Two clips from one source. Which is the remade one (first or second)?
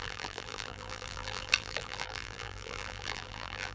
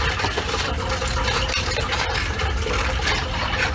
first